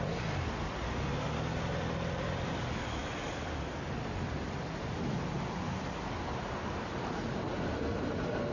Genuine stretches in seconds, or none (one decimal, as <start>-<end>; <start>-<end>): 0.0-8.5